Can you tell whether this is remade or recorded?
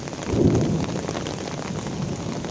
recorded